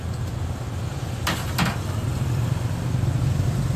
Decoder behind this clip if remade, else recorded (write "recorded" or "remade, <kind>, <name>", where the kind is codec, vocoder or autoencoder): recorded